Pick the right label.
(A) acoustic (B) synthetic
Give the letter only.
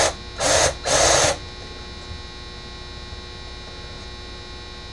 A